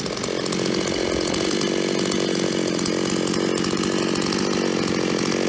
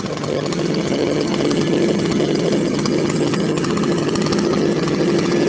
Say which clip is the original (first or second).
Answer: first